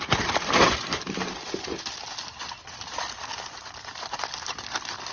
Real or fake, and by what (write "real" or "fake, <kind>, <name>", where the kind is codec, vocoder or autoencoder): real